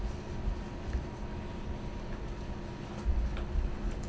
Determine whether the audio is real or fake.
real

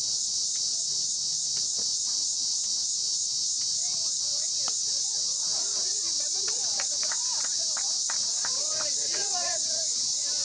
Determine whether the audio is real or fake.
fake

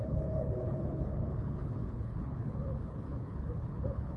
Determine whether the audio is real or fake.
fake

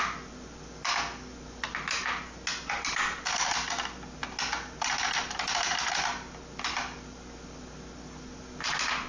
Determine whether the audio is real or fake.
real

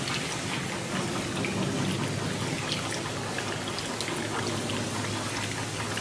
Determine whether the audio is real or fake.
real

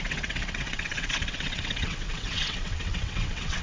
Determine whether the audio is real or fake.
fake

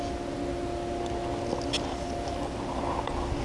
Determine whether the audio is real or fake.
real